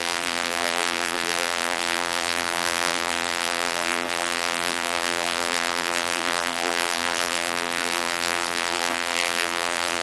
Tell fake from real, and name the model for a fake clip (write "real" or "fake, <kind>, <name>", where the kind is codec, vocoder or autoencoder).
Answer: fake, vocoder, BigVGAN v2